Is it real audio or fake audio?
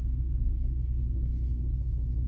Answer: real